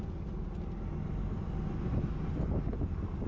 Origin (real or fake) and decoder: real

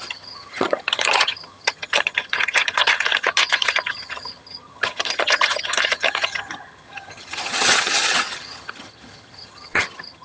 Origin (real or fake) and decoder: fake, vocoder, HiFi-GAN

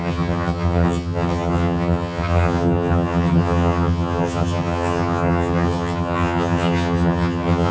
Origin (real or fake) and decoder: fake, vocoder, HiFi-GAN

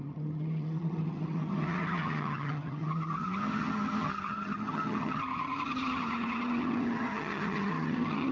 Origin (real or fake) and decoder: fake, vocoder, HiFi-GAN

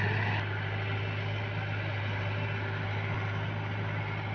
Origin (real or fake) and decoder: real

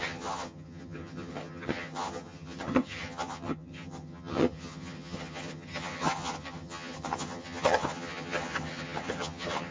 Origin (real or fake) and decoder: fake, vocoder, HiFi-GAN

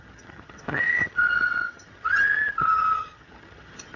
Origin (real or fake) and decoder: fake, vocoder, HiFi-GAN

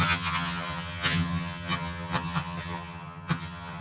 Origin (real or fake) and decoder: fake, vocoder, HiFi-GAN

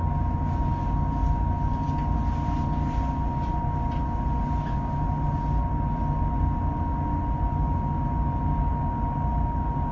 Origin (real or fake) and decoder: real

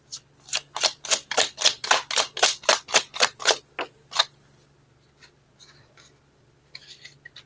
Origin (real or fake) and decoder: real